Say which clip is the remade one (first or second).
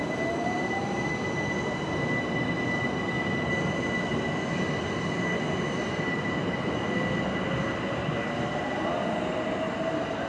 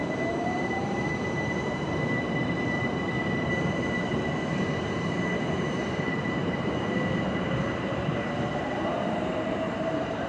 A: second